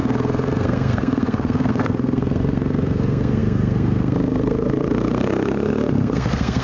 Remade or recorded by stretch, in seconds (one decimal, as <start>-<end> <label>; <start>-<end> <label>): 0.0-6.6 remade